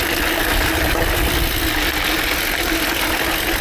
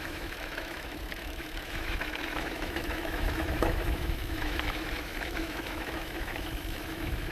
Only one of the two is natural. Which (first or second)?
first